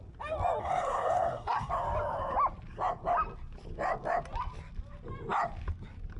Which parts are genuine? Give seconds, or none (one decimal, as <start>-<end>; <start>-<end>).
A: 0.0-0.6; 1.7-6.2

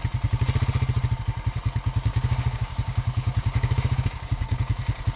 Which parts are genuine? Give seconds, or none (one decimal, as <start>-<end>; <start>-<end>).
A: 0.0-2.1; 4.6-5.2